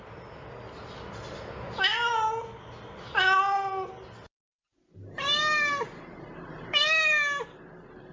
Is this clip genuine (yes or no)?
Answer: yes